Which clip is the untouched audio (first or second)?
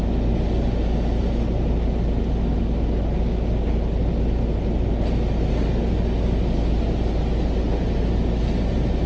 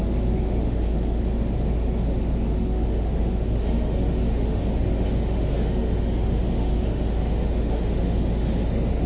first